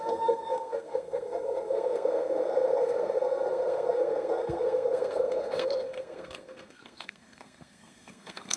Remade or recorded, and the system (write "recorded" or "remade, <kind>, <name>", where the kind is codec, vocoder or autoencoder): remade, codec, SNAC